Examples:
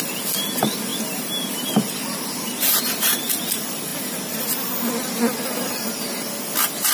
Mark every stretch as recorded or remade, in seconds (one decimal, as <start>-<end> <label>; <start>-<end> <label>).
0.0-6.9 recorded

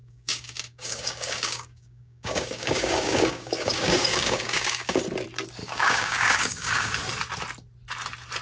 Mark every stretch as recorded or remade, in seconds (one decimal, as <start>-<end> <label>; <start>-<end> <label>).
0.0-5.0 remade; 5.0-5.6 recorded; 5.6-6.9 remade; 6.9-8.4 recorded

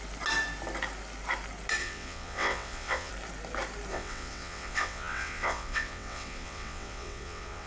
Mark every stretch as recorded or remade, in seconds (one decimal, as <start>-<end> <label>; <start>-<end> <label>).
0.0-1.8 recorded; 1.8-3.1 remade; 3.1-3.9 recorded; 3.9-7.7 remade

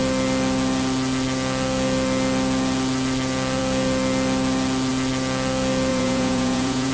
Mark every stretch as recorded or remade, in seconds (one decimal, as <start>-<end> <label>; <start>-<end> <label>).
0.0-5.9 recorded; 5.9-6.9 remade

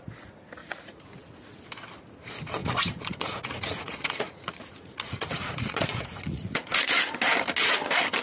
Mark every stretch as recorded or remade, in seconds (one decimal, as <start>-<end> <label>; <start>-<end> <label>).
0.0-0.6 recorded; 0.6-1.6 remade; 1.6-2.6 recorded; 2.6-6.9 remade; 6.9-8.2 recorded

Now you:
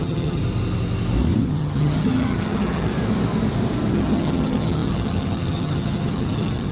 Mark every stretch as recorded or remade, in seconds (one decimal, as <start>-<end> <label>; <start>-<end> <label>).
0.0-0.4 remade; 0.4-1.4 recorded; 1.4-2.9 remade; 2.9-3.9 recorded; 3.9-6.7 remade

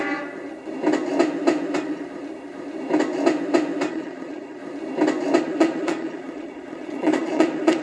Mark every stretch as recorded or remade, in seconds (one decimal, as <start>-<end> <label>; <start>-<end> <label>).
0.0-3.9 recorded; 3.9-4.6 remade; 4.6-5.4 recorded; 5.4-7.8 remade

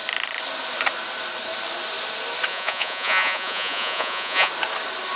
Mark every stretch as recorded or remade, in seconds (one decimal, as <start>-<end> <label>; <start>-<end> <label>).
0.0-2.5 recorded; 2.5-4.5 remade; 4.5-5.2 recorded